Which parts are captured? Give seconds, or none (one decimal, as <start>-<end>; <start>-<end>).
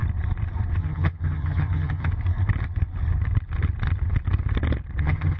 0.0-0.8; 2.1-5.0